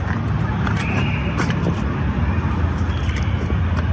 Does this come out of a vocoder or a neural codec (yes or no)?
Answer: no